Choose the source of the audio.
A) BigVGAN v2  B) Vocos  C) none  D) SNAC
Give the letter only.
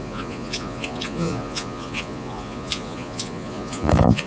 B